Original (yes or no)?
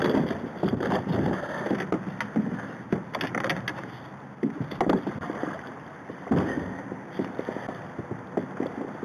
yes